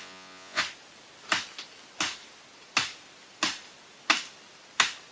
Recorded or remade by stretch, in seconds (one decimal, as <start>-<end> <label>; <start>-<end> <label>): 0.0-0.6 remade; 0.6-5.1 recorded